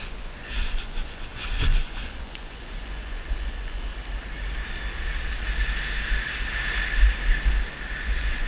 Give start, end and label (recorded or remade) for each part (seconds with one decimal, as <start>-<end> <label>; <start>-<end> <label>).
0.0-3.9 remade; 3.9-8.0 recorded; 8.0-8.5 remade